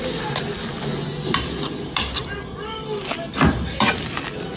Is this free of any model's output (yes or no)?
yes